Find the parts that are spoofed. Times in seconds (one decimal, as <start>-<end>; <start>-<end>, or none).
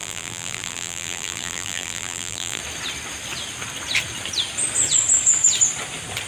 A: 0.0-2.6